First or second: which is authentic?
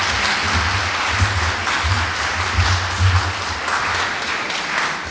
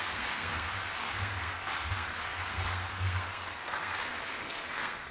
first